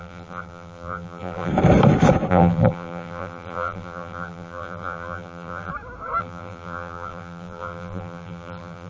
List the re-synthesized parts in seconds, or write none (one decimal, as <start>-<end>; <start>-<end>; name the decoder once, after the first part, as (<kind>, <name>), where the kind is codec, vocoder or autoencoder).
0.0-1.5 (vocoder, BigVGAN v2); 2.3-5.7; 6.2-8.9

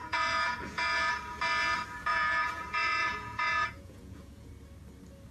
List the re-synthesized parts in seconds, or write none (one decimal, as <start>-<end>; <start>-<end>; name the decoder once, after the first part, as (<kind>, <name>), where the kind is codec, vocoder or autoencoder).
0.0-1.1 (vocoder, Vocos); 2.1-4.5

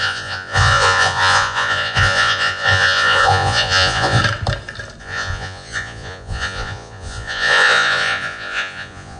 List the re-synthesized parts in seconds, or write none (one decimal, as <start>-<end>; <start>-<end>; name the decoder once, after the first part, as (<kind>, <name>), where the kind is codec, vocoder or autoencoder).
0.0-4.2 (vocoder, Vocos); 5.0-9.2

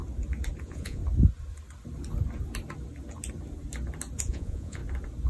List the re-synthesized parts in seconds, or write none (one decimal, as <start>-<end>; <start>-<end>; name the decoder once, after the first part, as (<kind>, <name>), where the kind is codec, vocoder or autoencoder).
0.6-1.0 (vocoder, Vocos); 4.2-4.8